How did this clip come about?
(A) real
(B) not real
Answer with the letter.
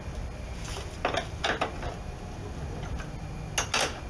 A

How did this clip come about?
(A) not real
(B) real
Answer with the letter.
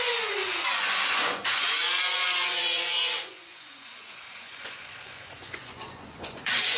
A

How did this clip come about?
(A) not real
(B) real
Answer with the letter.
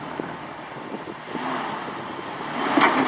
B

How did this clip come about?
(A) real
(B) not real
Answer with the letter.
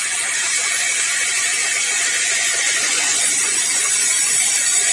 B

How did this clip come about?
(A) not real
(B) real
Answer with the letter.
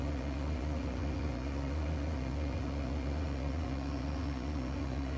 A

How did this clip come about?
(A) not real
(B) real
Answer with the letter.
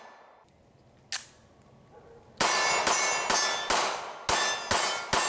B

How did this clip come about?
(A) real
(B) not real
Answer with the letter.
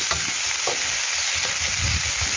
A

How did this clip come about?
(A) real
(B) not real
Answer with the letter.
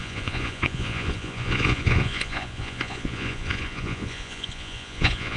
B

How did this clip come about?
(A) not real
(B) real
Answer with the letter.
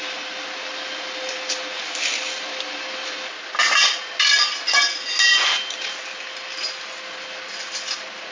B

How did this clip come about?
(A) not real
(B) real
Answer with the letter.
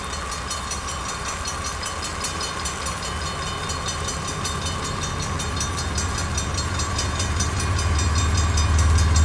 B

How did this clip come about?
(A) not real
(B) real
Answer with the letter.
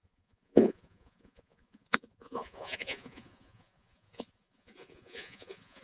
A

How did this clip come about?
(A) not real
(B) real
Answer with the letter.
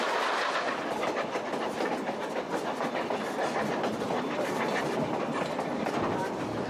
B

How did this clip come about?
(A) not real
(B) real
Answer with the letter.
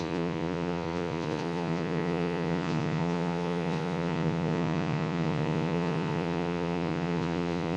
A